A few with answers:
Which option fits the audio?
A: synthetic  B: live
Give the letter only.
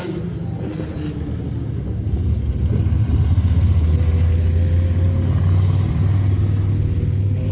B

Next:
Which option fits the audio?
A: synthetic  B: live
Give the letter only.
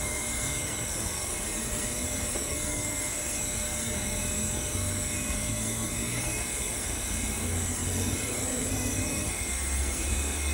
A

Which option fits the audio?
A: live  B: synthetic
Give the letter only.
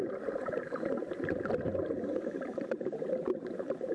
B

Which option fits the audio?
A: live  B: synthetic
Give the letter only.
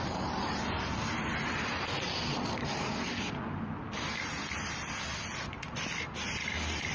A